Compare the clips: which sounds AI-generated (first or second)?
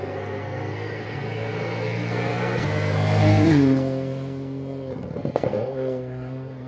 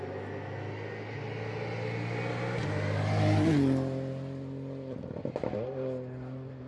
first